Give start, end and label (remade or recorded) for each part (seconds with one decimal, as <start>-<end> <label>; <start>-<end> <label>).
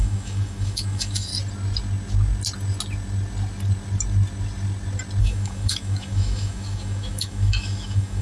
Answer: 0.0-1.3 remade; 1.3-5.2 recorded; 5.2-8.2 remade